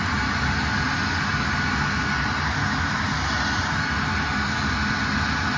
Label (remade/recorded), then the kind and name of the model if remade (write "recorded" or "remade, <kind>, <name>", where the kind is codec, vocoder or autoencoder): recorded